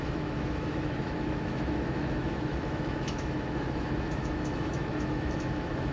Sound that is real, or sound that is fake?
fake